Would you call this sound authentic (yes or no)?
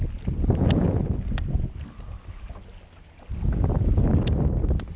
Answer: yes